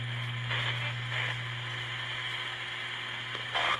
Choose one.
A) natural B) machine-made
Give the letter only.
A